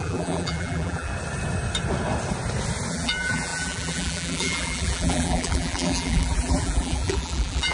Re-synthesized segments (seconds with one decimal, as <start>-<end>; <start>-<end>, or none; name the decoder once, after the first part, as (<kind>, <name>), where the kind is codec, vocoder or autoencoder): 0.0-1.1 (vocoder, BigVGAN v2); 2.9-7.7

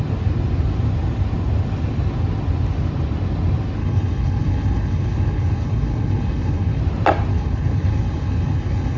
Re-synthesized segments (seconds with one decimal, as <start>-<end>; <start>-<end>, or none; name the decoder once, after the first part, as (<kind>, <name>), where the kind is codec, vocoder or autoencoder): 3.8-6.8 (codec, HILCodec); 7.3-9.0

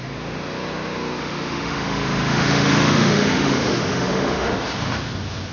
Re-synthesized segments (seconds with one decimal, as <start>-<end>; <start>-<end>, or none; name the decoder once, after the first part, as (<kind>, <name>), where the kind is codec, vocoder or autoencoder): 1.2-4.5 (autoencoder, DAC-VAE)

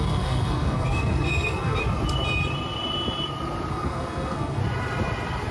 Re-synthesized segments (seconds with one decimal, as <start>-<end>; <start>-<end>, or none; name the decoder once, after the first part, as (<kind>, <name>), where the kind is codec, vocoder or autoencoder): 0.0-1.8 (codec, SNAC); 3.7-4.6

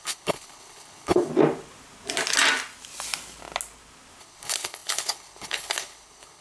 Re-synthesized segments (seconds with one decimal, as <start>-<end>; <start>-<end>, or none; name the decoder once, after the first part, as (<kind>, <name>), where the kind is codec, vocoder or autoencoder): 0.0-1.3 (codec, HILCodec); 4.2-6.4

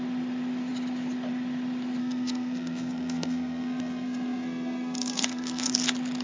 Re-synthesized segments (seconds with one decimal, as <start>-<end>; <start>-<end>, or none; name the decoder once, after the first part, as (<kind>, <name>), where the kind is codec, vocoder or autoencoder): 2.0-5.7 (codec, SNAC)

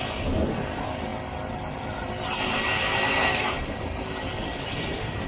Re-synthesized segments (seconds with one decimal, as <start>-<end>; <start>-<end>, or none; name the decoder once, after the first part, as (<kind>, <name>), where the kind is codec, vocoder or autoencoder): 2.7-3.6 (vocoder, BigVGAN v2)